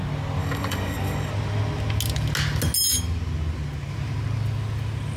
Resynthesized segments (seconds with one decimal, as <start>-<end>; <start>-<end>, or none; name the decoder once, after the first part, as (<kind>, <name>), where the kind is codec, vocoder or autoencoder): 0.4-1.3 (codec, DAC)